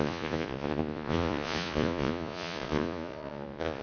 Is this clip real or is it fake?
fake